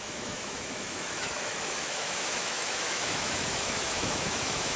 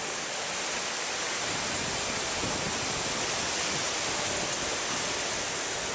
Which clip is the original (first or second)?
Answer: second